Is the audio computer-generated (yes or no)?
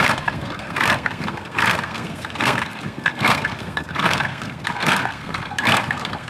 yes